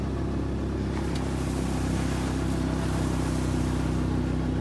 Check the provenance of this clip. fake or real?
real